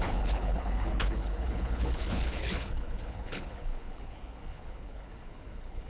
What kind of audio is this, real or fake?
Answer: fake